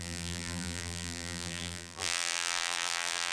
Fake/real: fake